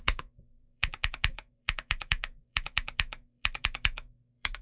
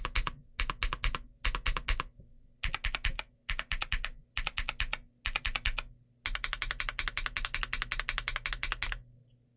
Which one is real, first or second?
second